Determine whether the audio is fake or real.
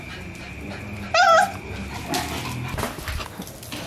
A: real